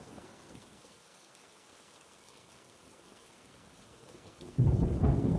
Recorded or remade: remade